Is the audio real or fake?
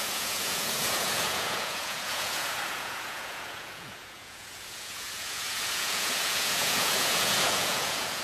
fake